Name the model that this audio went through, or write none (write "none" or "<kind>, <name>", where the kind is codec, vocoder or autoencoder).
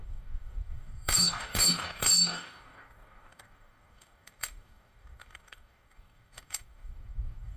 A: codec, DAC